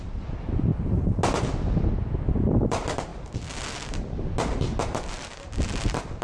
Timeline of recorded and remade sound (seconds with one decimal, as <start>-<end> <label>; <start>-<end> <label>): 0.0-0.7 remade; 0.7-1.6 recorded; 1.6-3.1 remade; 3.1-5.1 recorded; 5.1-6.2 remade